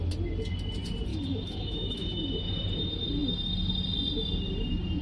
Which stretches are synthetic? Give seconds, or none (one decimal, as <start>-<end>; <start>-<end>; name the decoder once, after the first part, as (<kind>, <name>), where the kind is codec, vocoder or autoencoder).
1.1-2.2 (autoencoder, DAC-VAE)